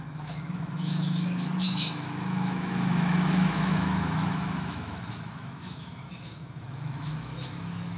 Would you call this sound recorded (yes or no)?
no